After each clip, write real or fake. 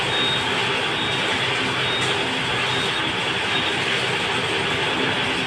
real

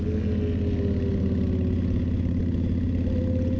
real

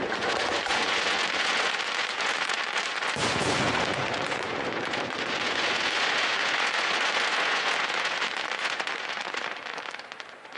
fake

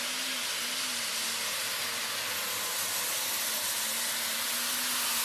real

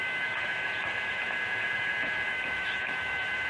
fake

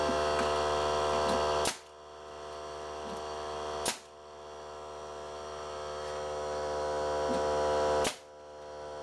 real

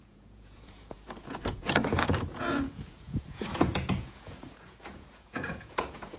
fake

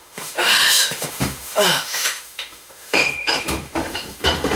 fake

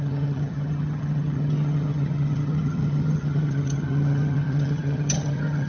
fake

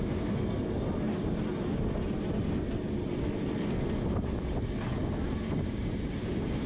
real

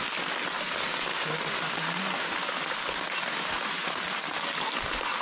real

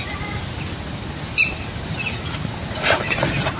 real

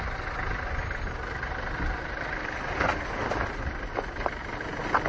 real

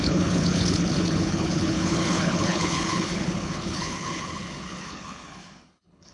fake